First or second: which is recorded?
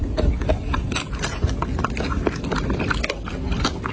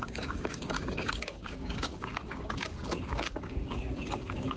first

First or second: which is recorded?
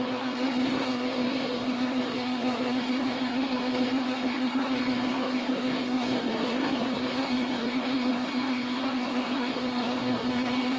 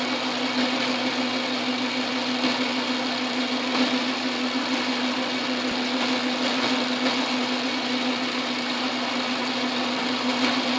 second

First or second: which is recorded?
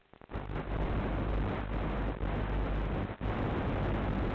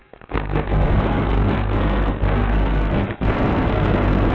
first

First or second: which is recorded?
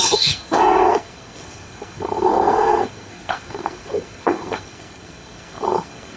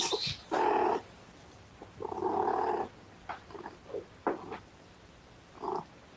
second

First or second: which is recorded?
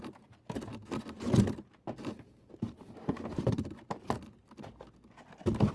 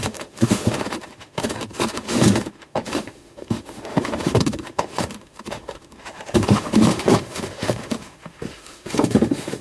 first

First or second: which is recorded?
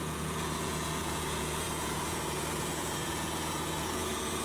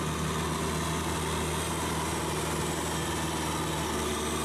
second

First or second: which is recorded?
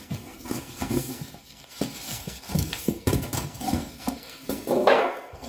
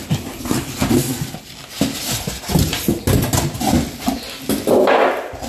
second